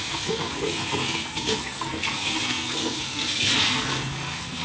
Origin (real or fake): fake